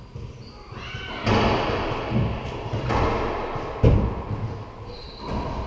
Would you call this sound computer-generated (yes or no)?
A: no